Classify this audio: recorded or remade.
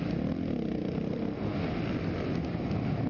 recorded